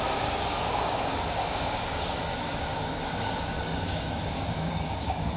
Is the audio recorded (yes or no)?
no